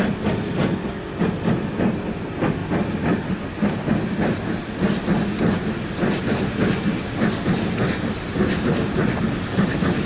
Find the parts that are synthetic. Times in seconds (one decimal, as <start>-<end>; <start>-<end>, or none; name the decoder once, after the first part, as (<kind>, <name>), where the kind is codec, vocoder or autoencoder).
none